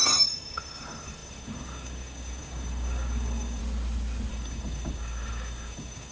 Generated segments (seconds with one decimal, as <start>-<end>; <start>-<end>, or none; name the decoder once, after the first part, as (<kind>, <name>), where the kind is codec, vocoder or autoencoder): 0.0-3.6 (codec, DAC); 4.3-6.1